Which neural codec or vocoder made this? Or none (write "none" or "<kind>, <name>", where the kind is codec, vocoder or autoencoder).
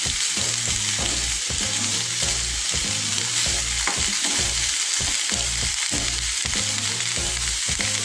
none